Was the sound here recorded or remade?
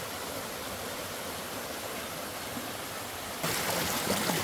remade